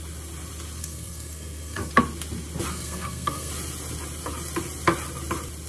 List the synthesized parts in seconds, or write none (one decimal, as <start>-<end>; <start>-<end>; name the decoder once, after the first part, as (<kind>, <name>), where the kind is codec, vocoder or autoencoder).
0.8-1.9 (codec, SNAC); 2.7-3.5